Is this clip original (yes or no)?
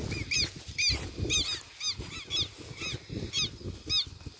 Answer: yes